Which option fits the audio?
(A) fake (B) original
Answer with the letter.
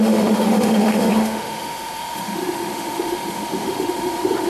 A